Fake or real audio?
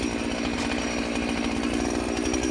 real